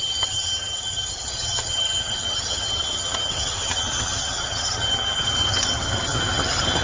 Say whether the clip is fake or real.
fake